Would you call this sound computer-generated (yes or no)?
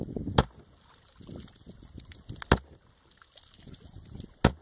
no